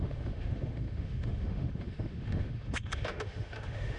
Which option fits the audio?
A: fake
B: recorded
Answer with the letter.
A